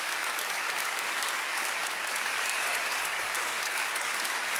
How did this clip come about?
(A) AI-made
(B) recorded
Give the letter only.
A